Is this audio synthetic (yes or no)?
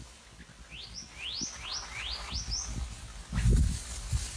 no